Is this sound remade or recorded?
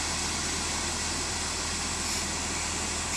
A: recorded